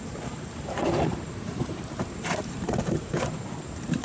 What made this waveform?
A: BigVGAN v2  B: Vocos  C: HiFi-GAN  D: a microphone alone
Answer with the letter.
A